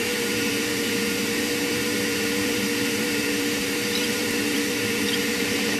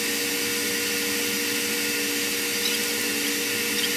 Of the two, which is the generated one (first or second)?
first